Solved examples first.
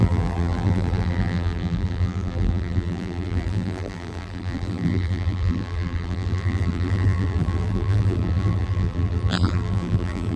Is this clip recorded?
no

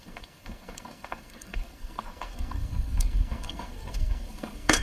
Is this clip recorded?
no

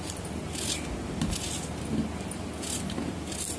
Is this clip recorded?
yes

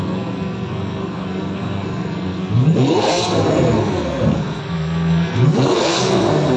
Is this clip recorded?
no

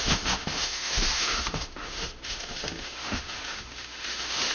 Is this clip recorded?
no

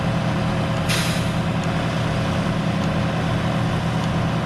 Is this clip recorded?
yes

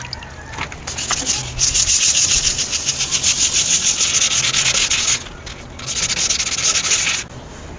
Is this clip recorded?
yes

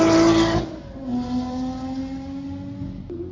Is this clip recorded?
yes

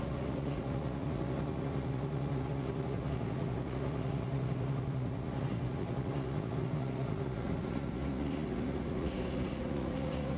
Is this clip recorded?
no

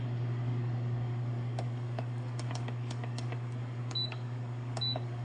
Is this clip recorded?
no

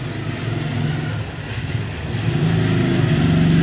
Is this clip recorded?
yes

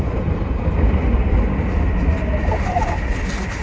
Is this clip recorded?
yes